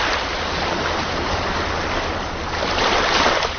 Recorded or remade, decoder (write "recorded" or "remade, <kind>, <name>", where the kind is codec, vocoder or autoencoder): recorded